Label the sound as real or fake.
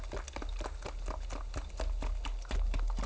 real